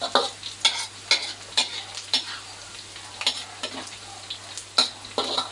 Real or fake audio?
real